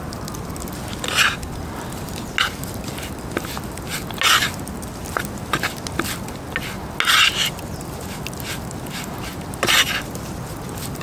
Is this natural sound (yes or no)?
yes